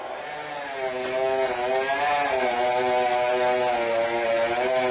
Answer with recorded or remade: recorded